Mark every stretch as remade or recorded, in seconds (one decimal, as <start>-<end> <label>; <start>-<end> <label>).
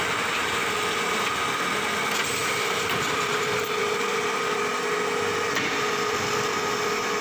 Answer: 0.0-2.4 recorded; 2.4-4.6 remade; 4.6-7.2 recorded